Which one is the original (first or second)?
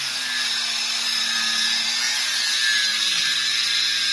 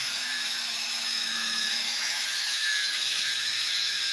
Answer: first